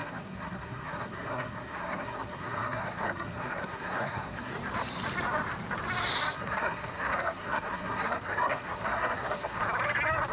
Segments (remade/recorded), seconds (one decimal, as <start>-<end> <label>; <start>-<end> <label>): 0.0-4.5 remade; 4.5-6.3 recorded; 6.3-9.6 remade; 9.6-10.3 recorded